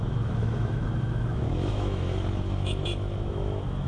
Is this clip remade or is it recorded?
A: remade